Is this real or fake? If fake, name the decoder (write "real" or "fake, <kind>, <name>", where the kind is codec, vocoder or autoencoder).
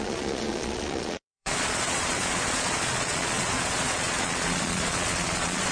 fake, vocoder, Vocos